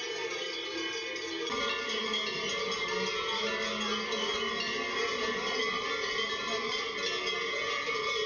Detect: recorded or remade recorded